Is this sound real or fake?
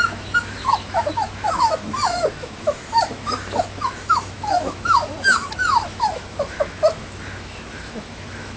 fake